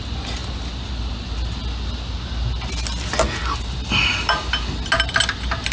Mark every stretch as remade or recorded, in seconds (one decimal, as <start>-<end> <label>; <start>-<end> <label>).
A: 0.0-5.7 recorded